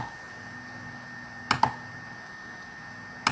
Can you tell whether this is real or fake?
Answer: real